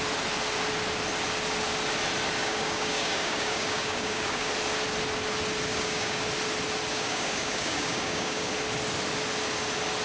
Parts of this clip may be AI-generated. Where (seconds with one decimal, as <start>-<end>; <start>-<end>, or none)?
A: 2.4-4.5; 5.7-6.2; 6.9-8.5